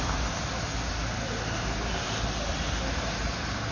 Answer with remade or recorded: recorded